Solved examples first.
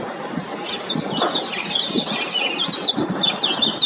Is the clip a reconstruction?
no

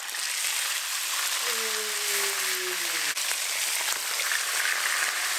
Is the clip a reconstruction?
no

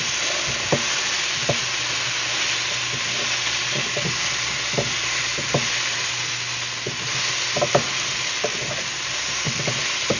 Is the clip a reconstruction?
no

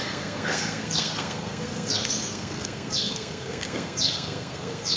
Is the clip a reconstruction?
yes